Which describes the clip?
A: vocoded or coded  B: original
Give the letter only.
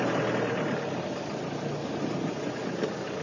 B